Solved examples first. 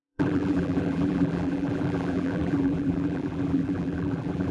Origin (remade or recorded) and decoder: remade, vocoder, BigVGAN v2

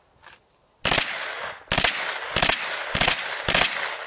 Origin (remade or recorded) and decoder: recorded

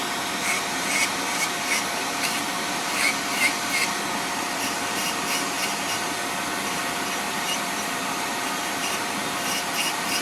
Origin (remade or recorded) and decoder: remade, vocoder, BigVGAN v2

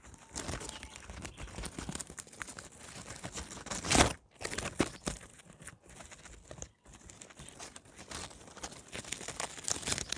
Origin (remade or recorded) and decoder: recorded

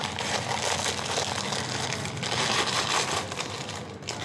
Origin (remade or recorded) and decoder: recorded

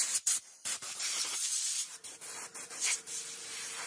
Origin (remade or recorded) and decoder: remade, vocoder, BigVGAN v2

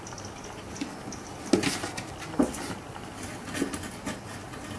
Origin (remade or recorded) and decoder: recorded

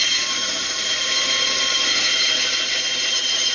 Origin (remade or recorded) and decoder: remade, vocoder, BigVGAN v2